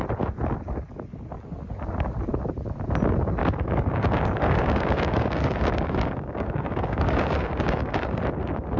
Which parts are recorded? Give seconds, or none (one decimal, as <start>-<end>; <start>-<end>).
0.0-3.4; 8.2-8.8